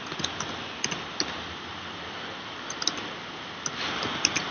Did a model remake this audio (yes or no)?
no